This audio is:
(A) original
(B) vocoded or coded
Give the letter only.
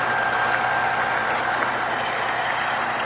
A